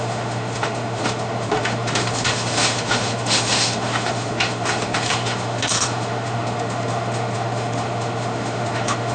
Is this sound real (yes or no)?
no